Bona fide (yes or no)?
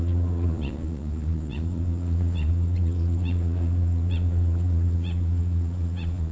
no